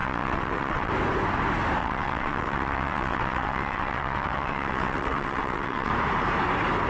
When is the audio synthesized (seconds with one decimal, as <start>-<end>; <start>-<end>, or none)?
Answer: 0.0-0.9; 1.8-5.9